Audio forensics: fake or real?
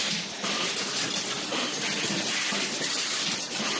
real